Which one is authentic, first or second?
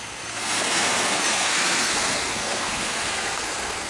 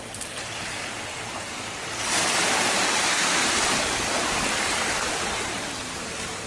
second